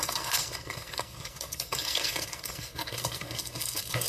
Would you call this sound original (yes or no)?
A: no